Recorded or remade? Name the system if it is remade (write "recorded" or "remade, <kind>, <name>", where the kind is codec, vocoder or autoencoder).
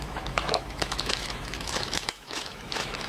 remade, autoencoder, DAC-VAE